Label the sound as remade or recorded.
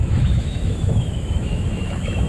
remade